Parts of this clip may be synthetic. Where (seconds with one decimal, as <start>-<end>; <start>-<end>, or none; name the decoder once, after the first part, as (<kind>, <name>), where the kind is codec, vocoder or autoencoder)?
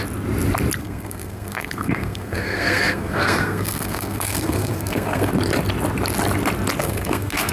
0.8-5.3 (codec, SNAC); 6.8-7.5